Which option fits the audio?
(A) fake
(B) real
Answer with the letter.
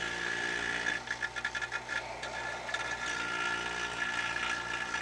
B